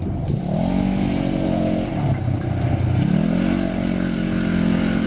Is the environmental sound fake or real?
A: real